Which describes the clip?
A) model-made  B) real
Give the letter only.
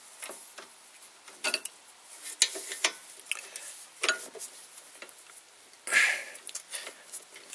B